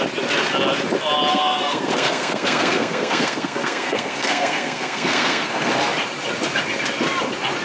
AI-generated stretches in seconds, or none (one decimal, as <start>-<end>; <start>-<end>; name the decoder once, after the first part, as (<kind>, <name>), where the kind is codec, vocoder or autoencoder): 1.3-5.7 (codec, SNAC)